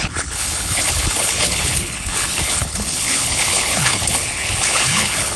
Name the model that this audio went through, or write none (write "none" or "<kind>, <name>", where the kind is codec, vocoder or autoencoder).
codec, HILCodec